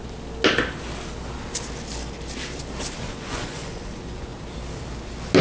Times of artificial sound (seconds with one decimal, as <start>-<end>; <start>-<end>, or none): 3.0-4.3